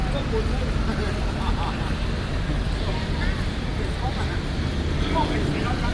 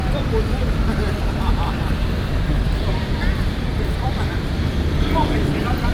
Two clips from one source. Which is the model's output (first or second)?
second